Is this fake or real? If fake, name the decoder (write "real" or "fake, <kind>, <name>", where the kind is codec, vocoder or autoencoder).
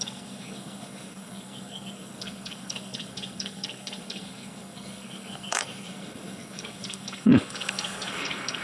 fake, codec, SNAC